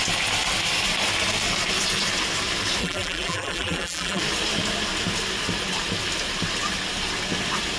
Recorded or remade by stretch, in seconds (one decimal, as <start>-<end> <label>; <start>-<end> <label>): 0.0-2.8 recorded; 2.8-4.2 remade; 4.2-7.8 recorded